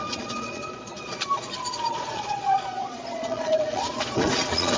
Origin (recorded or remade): remade